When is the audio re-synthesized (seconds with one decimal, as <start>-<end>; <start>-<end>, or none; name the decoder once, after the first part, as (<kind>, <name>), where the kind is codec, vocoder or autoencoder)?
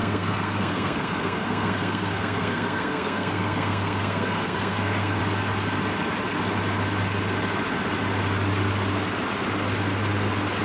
0.0-5.2 (codec, SNAC)